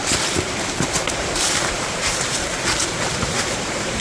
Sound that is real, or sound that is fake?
fake